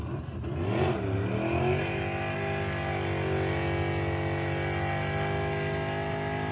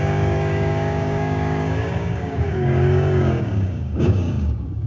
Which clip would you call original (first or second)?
first